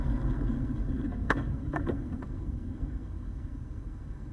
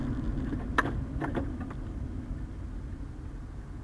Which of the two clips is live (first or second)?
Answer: second